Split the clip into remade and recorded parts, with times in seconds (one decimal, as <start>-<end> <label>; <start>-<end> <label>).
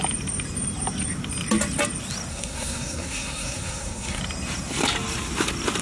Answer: 0.0-2.3 recorded; 2.3-4.2 remade; 4.2-5.8 recorded